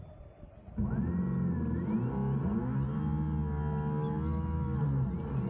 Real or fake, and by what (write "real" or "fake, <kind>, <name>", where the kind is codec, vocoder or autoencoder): real